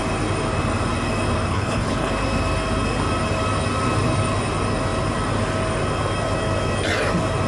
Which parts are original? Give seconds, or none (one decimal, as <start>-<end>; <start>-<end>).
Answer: 0.0-1.5; 2.1-7.5